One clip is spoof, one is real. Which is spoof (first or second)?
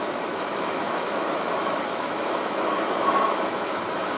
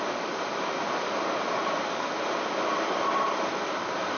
first